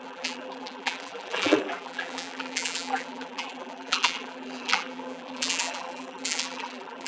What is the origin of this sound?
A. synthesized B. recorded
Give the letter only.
A